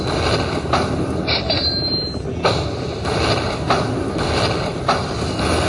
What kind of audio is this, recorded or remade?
recorded